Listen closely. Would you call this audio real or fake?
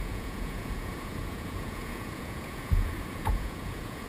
fake